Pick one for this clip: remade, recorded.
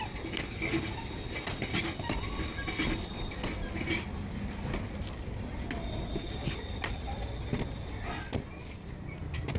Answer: recorded